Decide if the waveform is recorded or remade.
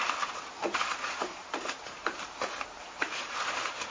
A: remade